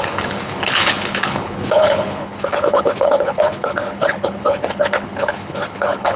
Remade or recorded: remade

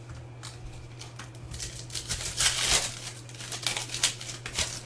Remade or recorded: recorded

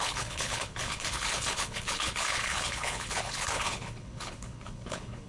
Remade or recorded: remade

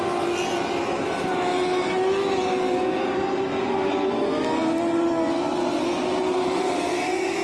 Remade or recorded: recorded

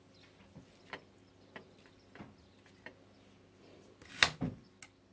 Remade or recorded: recorded